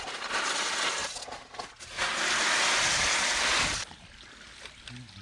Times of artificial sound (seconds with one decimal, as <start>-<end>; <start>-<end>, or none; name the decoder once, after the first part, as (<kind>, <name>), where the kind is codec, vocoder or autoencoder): none